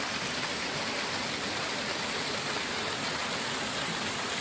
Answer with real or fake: real